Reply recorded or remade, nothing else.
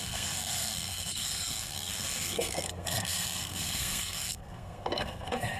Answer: remade